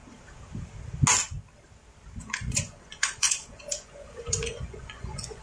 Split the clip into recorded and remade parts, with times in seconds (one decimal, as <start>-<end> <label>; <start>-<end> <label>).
0.0-2.2 recorded; 2.2-5.4 remade